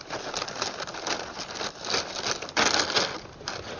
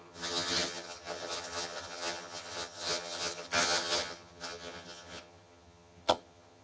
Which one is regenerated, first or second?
second